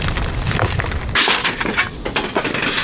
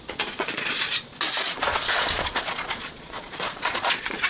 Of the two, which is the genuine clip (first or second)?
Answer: first